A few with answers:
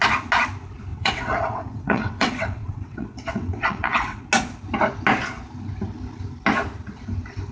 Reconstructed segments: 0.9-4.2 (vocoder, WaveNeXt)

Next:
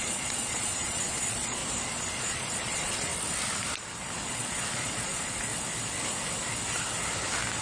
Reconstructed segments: 0.0-1.6 (vocoder, Vocos); 2.2-3.1; 4.3-5.5

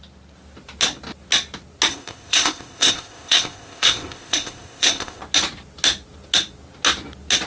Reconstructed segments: 1.9-5.2 (codec, ZipCodec)

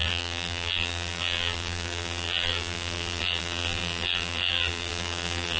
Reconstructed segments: 0.0-5.6 (vocoder, BigVGAN v2)

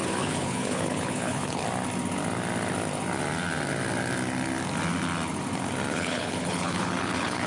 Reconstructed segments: 0.0-1.6 (codec, HILCodec); 5.9-7.5

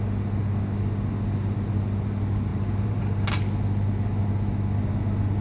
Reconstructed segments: 2.5-3.0 (vocoder, BigVGAN v2)

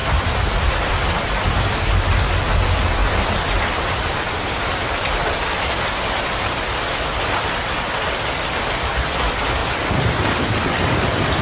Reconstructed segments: none

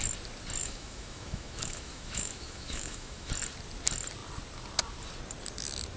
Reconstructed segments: 0.6-3.3 (autoencoder, DAC-VAE)